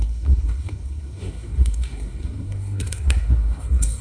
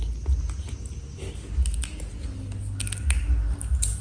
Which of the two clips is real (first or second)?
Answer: second